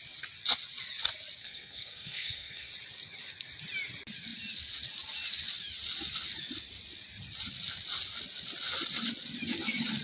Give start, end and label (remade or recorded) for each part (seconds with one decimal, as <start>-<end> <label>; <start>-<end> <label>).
0.0-1.4 recorded; 1.4-2.7 remade; 2.7-10.0 recorded